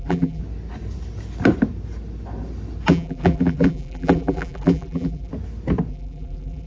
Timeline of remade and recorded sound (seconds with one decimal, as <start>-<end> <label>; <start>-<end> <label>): 0.0-0.4 remade; 0.4-2.9 recorded; 2.9-5.3 remade; 5.3-5.9 recorded; 5.9-6.7 remade